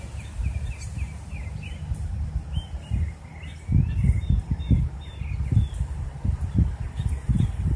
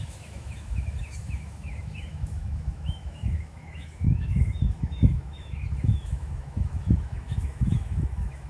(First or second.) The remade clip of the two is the second